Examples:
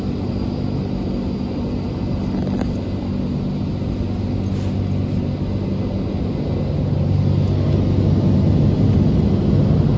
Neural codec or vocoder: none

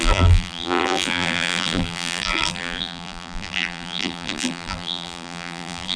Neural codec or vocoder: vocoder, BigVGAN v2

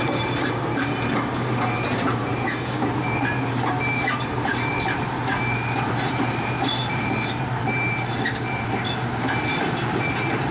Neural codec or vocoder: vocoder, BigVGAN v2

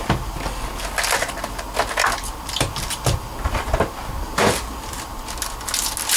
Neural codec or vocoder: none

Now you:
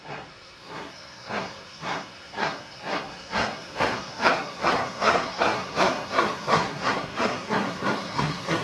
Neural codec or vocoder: codec, SNAC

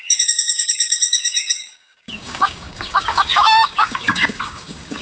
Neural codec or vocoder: codec, DAC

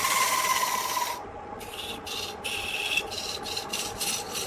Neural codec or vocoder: none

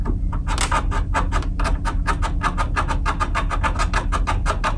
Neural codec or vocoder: none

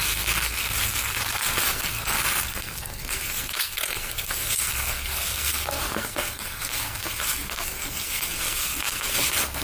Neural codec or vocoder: codec, SNAC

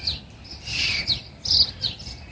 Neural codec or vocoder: none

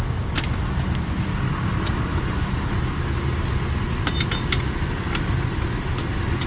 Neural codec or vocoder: none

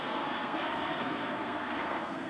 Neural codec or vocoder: codec, SNAC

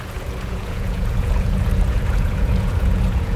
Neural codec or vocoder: vocoder, Vocos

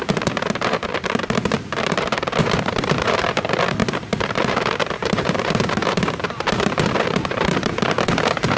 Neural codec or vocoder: vocoder, BigVGAN v2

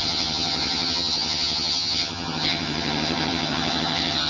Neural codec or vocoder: vocoder, HiFi-GAN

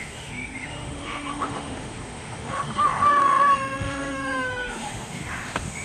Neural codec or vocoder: autoencoder, DAC-VAE